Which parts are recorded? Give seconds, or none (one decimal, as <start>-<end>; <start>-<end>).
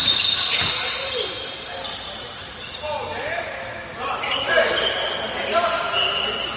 0.7-6.6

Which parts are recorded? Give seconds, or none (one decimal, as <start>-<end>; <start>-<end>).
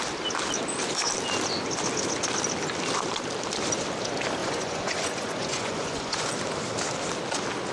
0.0-4.4; 6.3-7.7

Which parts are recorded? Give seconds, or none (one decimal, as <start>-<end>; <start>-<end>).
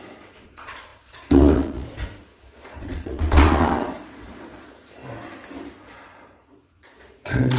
5.0-5.8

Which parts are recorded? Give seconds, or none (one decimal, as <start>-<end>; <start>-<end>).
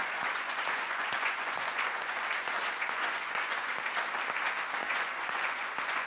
3.7-4.8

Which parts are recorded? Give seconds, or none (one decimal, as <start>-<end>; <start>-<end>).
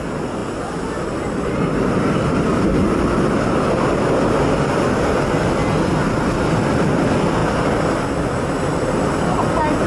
0.0-9.9